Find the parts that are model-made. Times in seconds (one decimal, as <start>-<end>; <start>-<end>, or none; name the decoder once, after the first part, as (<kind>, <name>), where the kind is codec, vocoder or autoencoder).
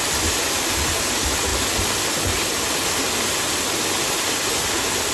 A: none